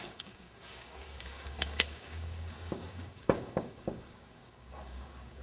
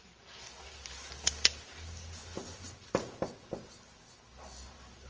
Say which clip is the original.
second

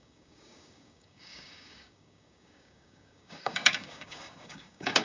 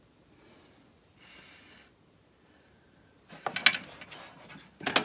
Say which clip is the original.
second